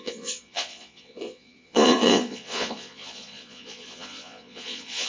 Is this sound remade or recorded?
remade